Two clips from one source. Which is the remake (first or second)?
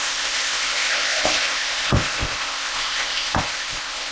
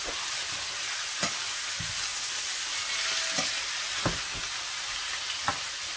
first